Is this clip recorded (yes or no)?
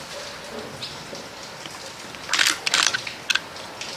yes